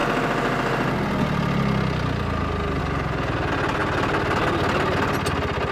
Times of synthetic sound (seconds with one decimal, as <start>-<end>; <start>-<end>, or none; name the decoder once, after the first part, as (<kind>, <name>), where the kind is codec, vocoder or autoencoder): none